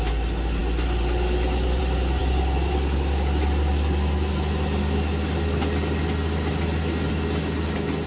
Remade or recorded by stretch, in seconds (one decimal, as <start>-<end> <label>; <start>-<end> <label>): 0.0-8.1 recorded